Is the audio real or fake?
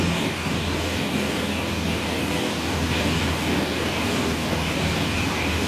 fake